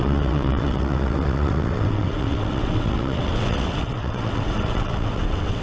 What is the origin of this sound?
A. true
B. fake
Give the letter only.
B